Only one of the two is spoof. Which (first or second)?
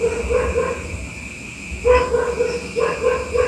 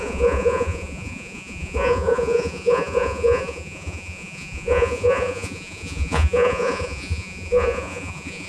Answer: second